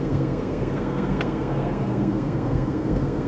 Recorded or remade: remade